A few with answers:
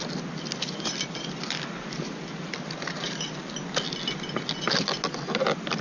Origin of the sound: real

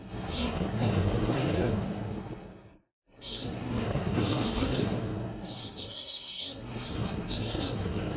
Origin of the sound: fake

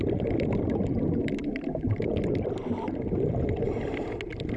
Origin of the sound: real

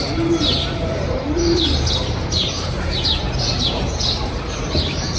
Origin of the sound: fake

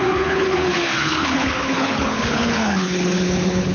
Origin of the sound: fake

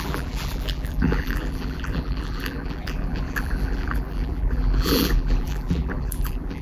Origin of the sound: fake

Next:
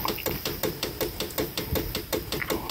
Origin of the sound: real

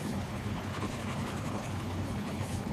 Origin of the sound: fake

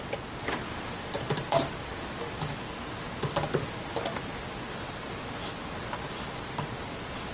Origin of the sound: real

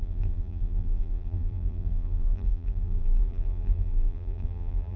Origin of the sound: fake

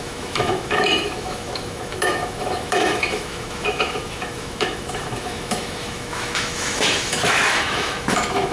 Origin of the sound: fake